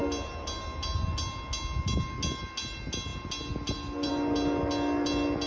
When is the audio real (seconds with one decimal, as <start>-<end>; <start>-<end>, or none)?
0.0-5.5